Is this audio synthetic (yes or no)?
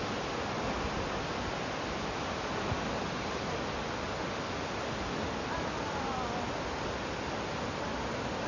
no